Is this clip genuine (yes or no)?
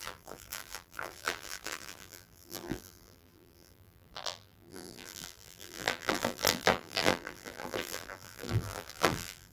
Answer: no